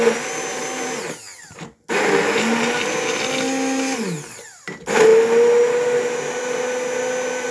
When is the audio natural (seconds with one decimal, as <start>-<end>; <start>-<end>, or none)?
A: 0.0-7.5